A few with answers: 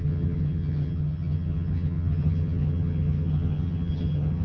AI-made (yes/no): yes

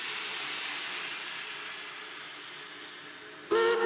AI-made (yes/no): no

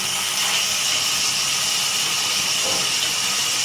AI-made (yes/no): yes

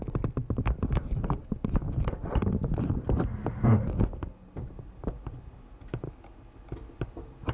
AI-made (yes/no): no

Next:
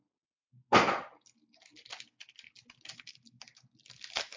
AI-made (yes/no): no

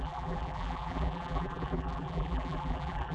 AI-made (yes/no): yes